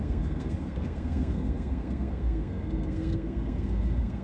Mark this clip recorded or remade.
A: remade